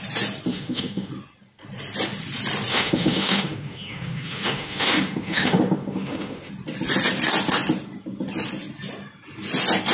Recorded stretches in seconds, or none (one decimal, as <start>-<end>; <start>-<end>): 0.0-0.5; 1.1-2.7; 6.5-9.9